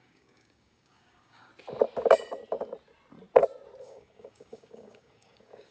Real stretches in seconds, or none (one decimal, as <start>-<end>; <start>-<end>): 1.5-3.8